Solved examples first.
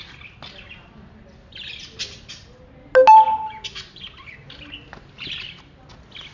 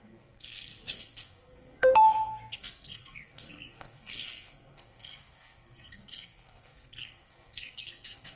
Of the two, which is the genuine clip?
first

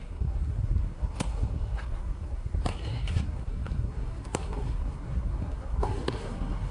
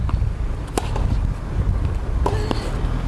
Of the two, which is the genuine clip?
second